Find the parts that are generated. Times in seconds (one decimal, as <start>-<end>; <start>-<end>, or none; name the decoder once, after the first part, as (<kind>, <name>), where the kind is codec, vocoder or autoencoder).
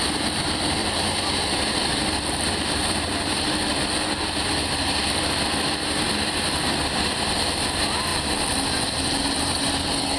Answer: 0.8-2.8 (vocoder, BigVGAN v2); 8.1-9.2